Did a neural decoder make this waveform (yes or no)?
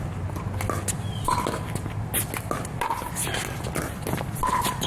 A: no